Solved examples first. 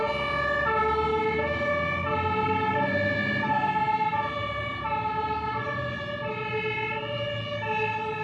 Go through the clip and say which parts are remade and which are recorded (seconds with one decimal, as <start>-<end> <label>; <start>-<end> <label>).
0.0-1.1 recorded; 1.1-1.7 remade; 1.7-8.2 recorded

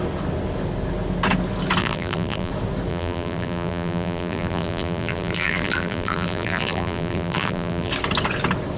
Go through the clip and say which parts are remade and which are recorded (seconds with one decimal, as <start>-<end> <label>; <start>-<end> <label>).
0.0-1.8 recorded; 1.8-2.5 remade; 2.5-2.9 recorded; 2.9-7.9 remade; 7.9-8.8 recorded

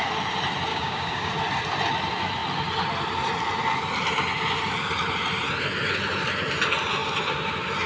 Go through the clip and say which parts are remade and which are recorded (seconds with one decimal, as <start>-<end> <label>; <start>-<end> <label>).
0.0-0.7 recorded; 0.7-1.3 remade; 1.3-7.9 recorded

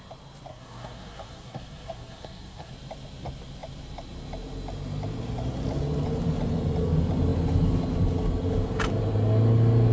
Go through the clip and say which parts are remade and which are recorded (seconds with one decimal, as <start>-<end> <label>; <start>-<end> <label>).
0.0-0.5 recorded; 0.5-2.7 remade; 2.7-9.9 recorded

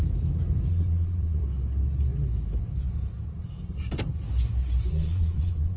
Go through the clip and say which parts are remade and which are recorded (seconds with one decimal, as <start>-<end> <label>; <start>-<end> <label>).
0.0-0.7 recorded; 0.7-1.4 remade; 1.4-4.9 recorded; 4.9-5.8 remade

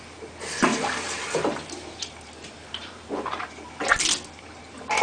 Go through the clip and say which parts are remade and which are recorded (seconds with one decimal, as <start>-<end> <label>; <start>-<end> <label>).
0.0-0.7 recorded; 0.7-3.7 remade; 3.7-5.0 recorded

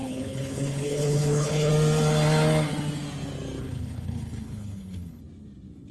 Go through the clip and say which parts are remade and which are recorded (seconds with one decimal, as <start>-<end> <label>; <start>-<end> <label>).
0.0-1.7 remade; 1.7-3.6 recorded; 3.6-5.2 remade; 5.2-5.9 recorded